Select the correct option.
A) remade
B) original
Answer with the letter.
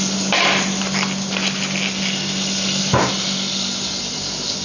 B